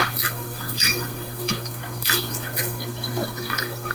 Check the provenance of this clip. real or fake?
fake